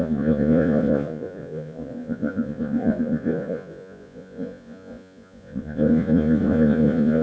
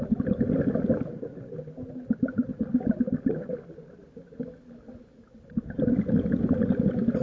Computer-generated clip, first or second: first